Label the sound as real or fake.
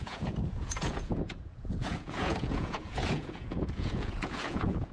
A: fake